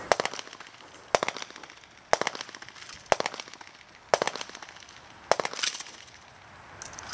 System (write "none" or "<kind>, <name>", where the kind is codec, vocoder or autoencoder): none